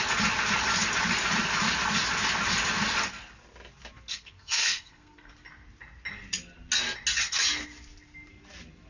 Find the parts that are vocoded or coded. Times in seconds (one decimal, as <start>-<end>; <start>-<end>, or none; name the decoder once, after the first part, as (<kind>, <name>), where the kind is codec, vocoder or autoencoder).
4.1-5.3 (codec, SNAC)